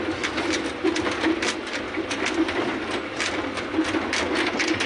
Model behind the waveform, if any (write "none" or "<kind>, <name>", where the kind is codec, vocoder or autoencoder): none